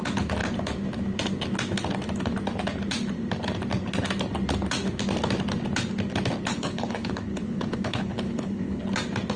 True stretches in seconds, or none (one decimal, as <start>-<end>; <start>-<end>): 0.0-6.5; 8.8-9.4